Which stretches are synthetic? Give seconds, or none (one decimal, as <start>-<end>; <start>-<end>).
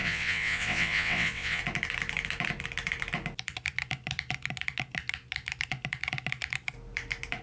0.0-1.6